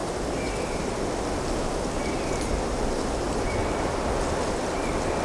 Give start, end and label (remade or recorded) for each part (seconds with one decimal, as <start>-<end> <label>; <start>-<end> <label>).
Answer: 0.0-5.2 recorded